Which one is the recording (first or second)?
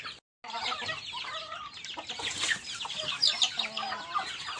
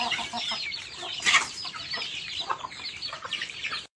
first